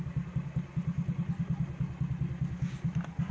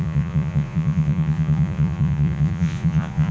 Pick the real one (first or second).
first